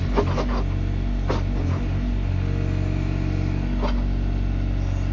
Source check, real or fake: real